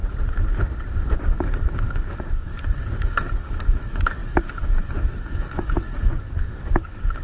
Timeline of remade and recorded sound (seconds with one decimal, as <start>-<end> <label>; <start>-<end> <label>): 0.0-1.2 recorded; 1.2-2.5 remade; 2.5-3.2 recorded; 3.2-7.2 remade